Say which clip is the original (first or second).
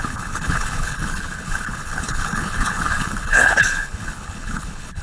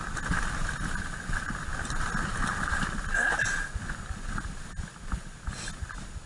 second